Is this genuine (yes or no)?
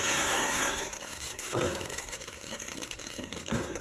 no